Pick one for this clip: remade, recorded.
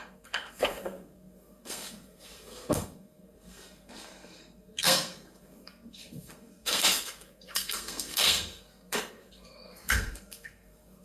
remade